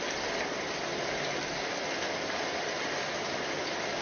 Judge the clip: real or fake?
real